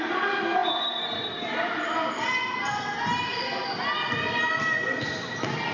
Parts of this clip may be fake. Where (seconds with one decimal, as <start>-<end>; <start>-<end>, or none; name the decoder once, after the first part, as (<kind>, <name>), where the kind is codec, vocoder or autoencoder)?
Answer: none